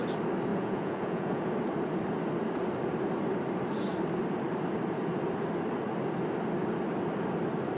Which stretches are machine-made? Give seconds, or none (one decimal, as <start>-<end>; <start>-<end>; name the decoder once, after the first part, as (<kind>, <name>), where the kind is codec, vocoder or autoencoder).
0.5-1.5 (vocoder, Vocos)

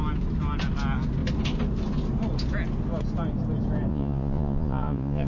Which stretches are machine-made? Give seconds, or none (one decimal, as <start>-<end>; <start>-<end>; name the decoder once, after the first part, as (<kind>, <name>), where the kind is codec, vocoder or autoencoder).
3.9-5.3 (vocoder, Vocos)

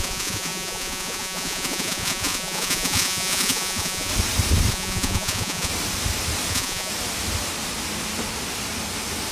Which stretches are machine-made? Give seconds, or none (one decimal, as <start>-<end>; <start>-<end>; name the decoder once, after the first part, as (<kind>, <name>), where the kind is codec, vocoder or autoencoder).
0.0-4.1 (vocoder, Vocos); 4.7-5.7; 6.5-6.9

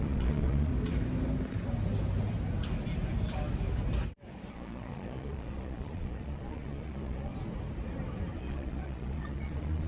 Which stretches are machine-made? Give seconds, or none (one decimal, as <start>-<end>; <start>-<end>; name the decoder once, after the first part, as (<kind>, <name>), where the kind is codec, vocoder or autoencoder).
0.0-0.7 (vocoder, Vocos); 4.5-7.3; 8.4-9.9

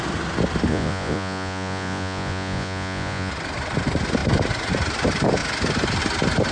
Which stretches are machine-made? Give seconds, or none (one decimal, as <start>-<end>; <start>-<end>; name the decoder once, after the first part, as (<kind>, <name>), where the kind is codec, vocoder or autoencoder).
0.7-3.3 (vocoder, Vocos)